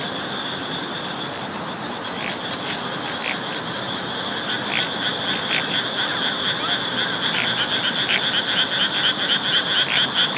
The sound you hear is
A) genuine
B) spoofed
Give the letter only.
A